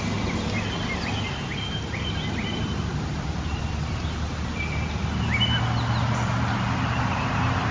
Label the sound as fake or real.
real